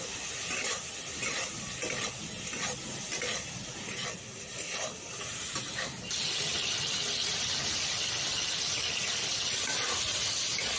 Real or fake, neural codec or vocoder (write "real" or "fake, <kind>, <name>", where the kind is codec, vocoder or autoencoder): real